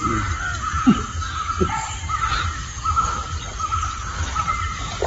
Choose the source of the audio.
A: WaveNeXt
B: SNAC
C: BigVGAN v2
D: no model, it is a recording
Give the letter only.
D